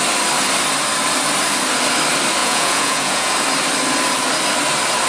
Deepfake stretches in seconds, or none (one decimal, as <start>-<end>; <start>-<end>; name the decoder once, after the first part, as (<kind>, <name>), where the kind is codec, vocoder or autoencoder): 2.4-3.3 (vocoder, Vocos)